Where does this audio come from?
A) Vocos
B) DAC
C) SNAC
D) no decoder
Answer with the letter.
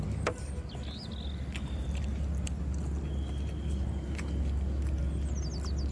D